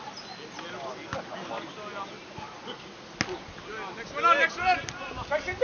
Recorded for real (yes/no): yes